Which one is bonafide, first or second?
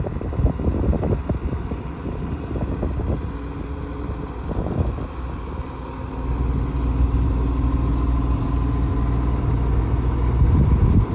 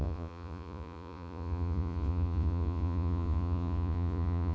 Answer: first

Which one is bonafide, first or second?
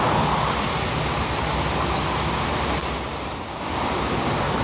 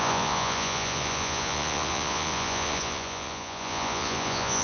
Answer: first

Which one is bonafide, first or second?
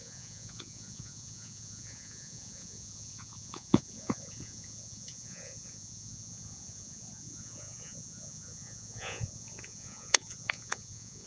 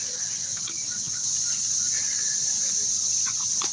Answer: second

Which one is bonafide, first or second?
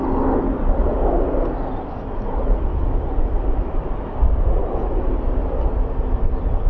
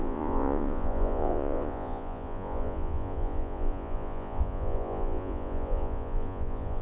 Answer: first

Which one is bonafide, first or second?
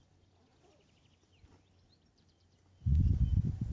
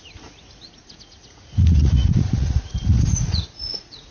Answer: first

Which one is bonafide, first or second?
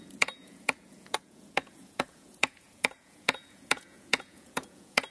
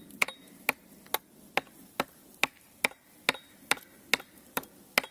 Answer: second